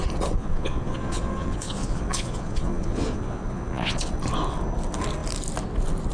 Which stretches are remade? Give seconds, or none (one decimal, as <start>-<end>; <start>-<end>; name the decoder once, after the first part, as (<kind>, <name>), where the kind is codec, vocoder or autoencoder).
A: 0.4-4.1 (vocoder, Vocos)